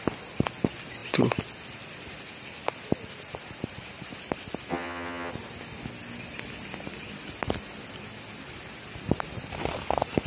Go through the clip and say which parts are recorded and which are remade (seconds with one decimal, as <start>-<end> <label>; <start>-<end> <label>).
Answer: 0.0-4.7 recorded; 4.7-5.3 remade; 5.3-10.3 recorded